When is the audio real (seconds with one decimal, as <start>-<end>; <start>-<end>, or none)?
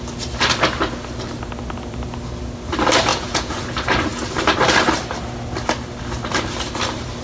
0.0-3.1; 3.6-7.2